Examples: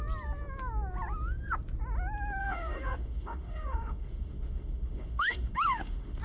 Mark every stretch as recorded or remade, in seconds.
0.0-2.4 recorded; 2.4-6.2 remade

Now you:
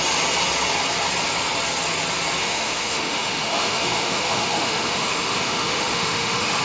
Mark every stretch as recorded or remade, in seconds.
0.0-2.4 recorded; 2.4-6.6 remade

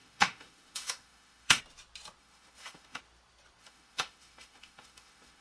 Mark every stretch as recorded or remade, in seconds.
0.0-1.6 remade; 1.6-2.2 recorded; 2.2-3.0 remade; 3.0-3.6 recorded; 3.6-5.4 remade

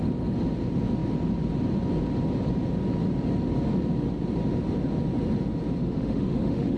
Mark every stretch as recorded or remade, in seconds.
0.0-5.8 recorded; 5.8-6.8 remade

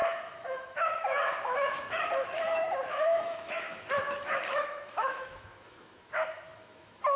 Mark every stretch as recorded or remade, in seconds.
0.0-7.2 remade